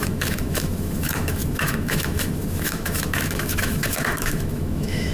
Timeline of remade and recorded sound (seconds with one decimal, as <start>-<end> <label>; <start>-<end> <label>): 0.0-5.1 remade